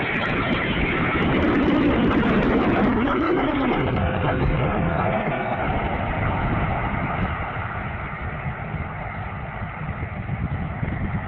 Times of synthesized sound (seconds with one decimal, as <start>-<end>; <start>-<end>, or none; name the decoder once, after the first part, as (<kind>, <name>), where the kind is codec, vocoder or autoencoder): 2.9-5.6 (codec, SNAC)